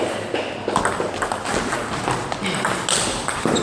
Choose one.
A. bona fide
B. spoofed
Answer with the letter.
A